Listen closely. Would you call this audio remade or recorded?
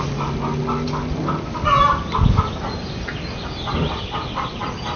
recorded